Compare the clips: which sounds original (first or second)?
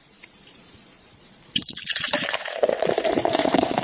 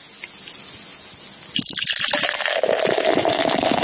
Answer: second